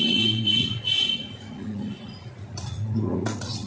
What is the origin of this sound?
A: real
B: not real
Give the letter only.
B